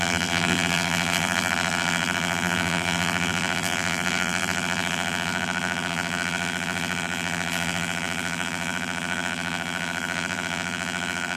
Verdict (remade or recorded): remade